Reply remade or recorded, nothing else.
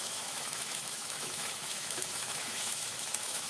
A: remade